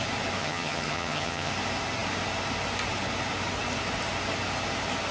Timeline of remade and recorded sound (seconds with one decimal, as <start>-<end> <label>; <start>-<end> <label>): 0.0-0.4 recorded; 0.4-1.5 remade; 1.5-5.1 recorded